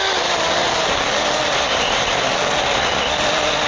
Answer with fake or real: real